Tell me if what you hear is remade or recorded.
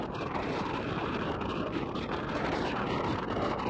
remade